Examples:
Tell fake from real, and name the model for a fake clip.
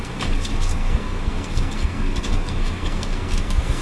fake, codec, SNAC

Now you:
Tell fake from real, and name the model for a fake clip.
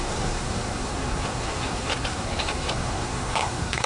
fake, codec, SNAC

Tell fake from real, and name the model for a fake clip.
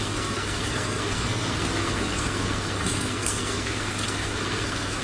fake, codec, SNAC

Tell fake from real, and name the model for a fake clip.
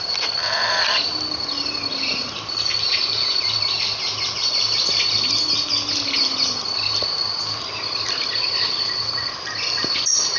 real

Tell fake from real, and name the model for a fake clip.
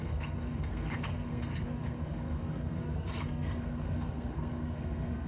fake, codec, SNAC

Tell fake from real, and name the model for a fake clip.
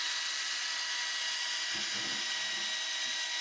real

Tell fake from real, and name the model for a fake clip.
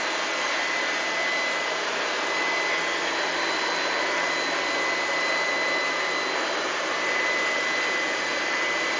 real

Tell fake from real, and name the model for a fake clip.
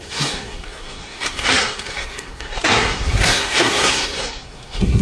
fake, codec, SNAC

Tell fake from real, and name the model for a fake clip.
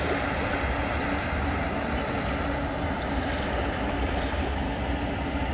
real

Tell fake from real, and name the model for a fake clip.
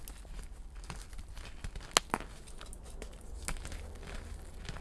real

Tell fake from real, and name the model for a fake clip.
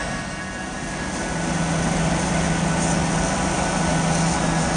real